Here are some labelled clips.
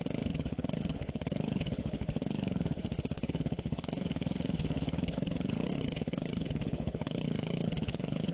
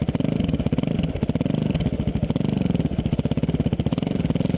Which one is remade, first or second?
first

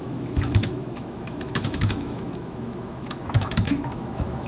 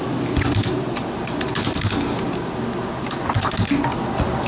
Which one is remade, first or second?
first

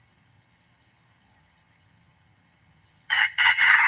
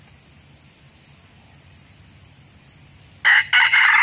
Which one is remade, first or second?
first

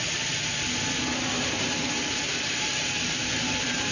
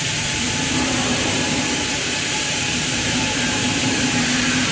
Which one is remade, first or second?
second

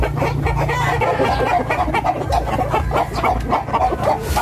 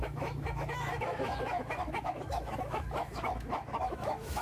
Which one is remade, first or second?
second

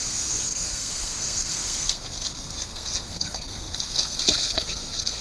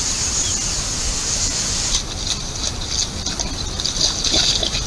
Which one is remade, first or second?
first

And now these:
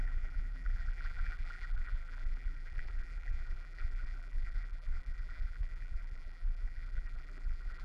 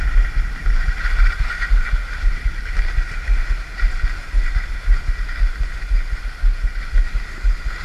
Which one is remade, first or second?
first